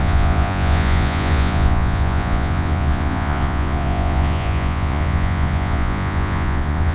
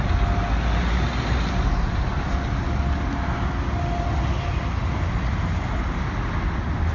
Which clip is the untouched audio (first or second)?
second